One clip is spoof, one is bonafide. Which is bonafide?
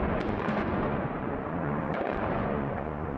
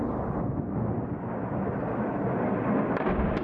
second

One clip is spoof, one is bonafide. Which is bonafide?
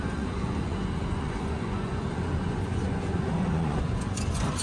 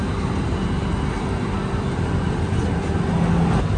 second